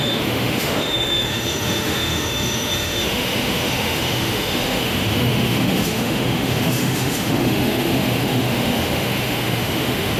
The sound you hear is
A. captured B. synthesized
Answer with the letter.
B